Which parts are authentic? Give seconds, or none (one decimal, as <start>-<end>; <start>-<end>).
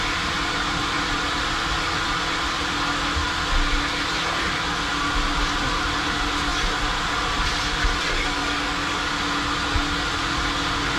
0.0-8.4; 9.1-11.0